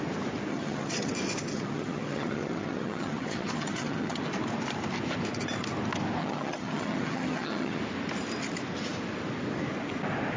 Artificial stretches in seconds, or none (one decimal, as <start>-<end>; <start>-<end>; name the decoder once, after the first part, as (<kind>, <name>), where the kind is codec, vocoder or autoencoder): 0.5-1.1 (vocoder, HiFi-GAN); 1.5-4.2; 6.2-7.8